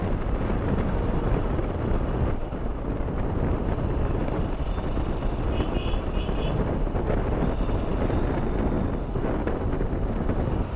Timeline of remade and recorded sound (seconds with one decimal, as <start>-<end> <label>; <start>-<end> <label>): 0.0-10.8 recorded